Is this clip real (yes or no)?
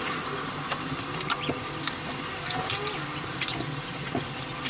yes